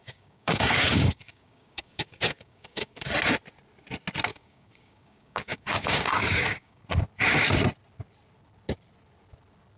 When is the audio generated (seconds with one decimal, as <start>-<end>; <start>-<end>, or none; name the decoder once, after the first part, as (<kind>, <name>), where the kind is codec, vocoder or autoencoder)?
0.0-3.1 (codec, DAC); 4.3-6.8